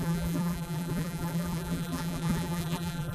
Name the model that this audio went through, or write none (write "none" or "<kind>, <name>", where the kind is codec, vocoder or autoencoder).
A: vocoder, BigVGAN v2